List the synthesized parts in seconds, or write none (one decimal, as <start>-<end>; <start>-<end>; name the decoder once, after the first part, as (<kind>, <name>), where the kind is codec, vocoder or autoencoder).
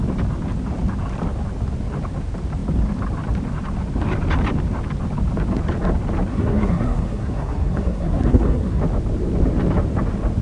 6.3-8.8 (codec, SNAC)